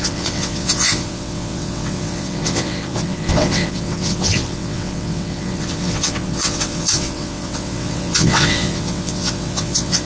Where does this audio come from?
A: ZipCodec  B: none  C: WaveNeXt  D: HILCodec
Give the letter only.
C